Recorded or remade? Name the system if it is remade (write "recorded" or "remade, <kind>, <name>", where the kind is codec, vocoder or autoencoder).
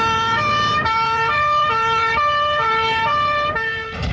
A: remade, vocoder, BigVGAN v2